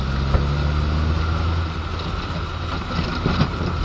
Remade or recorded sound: recorded